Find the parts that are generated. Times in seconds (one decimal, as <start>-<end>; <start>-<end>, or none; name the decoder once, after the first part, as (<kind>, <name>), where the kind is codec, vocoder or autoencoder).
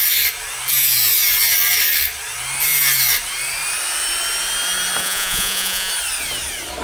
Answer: 5.0-5.9 (vocoder, Vocos)